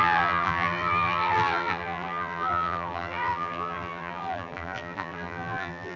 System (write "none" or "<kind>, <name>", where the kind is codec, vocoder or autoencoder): vocoder, BigVGAN v2